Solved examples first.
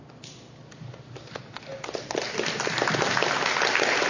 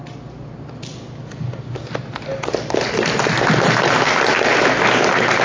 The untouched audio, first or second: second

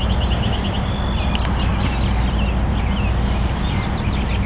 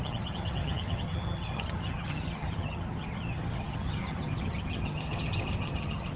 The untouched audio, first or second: first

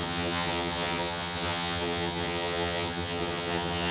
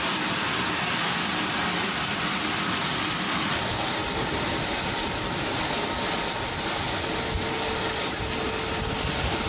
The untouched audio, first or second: second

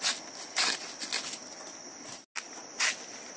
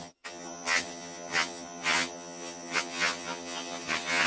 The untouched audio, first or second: first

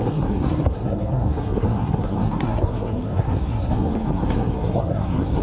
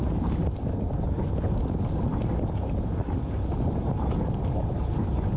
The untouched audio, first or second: second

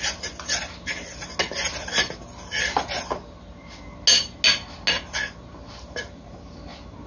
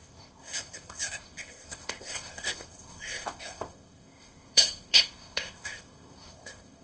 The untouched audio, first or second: first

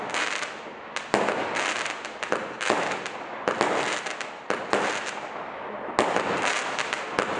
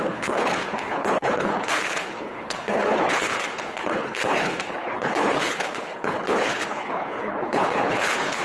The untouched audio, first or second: first